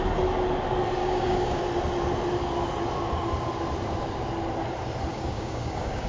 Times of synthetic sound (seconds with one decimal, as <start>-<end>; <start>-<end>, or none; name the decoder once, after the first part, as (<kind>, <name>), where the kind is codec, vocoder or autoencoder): 1.0-1.6 (codec, DAC); 5.1-6.1